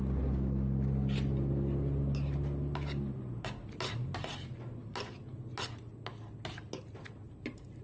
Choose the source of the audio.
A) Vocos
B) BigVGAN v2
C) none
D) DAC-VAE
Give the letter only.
C